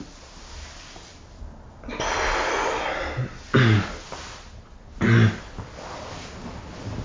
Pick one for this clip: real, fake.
real